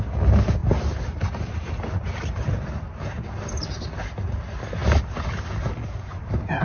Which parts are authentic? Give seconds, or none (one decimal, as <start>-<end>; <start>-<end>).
0.0-6.6